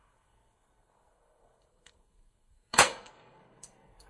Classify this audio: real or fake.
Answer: fake